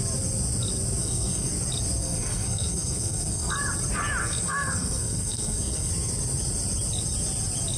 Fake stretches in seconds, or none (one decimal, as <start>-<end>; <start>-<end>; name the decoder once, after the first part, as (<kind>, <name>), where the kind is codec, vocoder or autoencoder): 1.0-1.5 (codec, SNAC); 2.0-3.5; 4.2-5.9